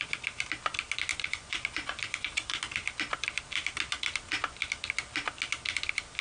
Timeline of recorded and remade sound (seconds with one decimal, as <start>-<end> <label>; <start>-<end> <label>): 0.0-1.1 recorded; 1.1-2.6 remade; 2.6-6.2 recorded